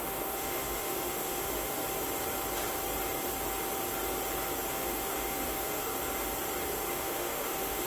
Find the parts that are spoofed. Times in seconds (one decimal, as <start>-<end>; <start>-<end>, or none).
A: 0.0-1.8; 4.7-5.9; 6.9-7.9

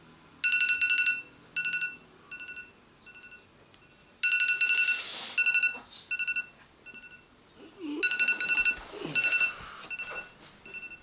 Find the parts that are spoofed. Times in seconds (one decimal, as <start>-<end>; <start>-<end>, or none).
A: none

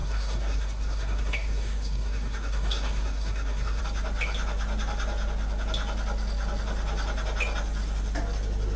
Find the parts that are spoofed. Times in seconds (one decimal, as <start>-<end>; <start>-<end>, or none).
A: 0.0-3.8

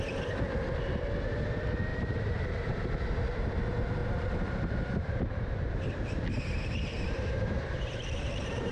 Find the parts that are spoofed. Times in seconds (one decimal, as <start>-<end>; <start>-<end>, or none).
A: 1.9-2.4; 4.0-8.7